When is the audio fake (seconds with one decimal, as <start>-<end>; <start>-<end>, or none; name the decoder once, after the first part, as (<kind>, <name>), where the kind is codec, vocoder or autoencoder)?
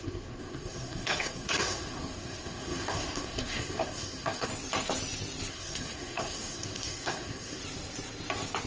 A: 0.0-4.5 (codec, SNAC); 5.5-7.6